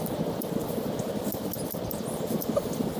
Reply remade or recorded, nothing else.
recorded